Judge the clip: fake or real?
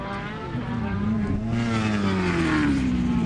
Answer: real